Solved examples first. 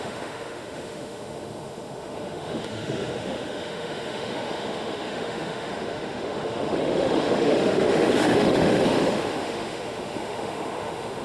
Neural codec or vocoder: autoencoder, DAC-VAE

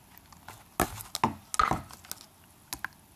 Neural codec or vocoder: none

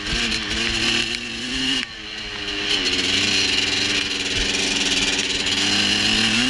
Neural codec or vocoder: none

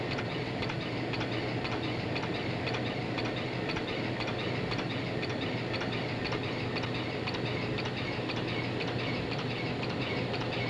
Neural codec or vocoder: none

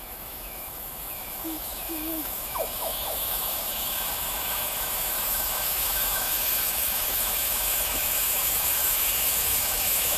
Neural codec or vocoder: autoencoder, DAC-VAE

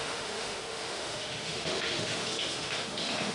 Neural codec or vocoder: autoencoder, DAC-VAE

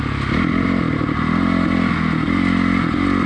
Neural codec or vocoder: none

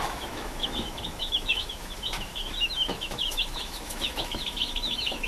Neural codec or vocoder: autoencoder, DAC-VAE